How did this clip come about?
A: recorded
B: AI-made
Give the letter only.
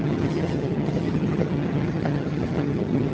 B